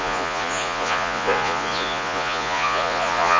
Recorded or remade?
remade